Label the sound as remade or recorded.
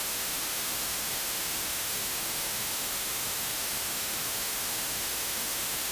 remade